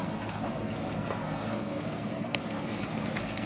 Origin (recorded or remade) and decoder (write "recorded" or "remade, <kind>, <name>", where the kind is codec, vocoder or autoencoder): remade, codec, SNAC